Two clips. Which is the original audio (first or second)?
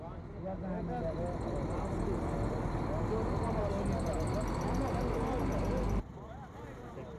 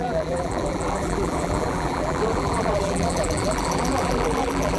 first